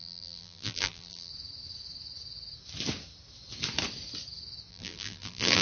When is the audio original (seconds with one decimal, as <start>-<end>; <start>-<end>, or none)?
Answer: 1.3-4.7